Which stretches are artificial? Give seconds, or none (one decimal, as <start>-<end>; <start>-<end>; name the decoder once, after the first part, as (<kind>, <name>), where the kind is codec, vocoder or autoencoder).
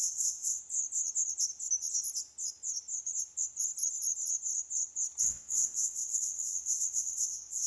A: 0.0-0.6 (vocoder, WaveNeXt); 5.2-7.7